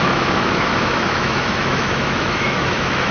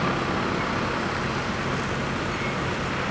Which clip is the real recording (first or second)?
second